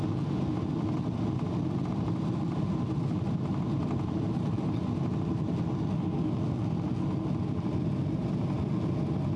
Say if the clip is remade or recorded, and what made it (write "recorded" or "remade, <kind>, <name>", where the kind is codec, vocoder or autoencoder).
recorded